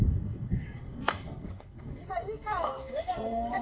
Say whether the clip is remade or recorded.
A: remade